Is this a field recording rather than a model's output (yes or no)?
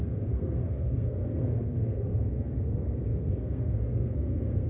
no